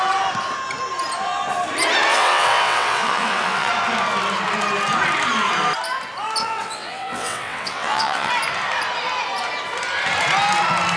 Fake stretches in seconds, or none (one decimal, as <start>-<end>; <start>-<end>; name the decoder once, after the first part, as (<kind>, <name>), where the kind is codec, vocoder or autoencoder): 2.1-3.7 (vocoder, WaveNeXt); 6.4-8.3